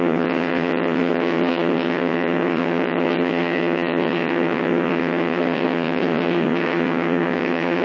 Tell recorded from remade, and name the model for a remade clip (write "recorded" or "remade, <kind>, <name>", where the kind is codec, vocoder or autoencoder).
remade, vocoder, HiFi-GAN